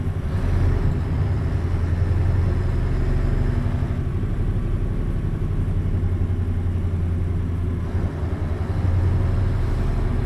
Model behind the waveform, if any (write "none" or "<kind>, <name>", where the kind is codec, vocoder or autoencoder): none